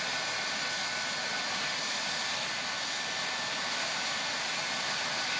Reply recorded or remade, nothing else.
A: recorded